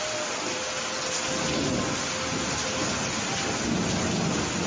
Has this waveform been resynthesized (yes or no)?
no